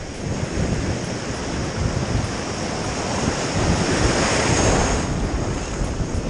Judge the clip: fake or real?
real